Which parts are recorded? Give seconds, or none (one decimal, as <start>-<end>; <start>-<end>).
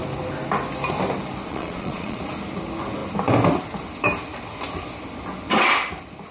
0.0-1.5; 2.2-6.3